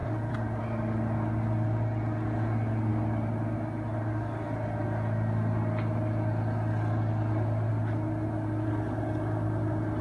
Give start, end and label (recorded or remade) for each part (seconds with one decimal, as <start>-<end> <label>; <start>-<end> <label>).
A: 0.0-0.6 remade; 0.6-10.0 recorded